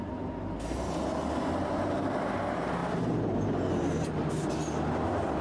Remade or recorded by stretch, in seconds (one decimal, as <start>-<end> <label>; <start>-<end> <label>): 0.0-2.8 recorded; 2.8-3.5 remade; 3.5-5.4 recorded